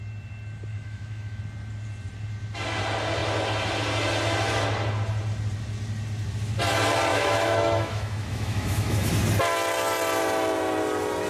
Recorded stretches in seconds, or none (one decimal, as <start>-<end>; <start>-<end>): 0.0-0.7; 1.4-7.1; 9.1-11.3